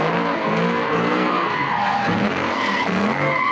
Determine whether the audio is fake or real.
fake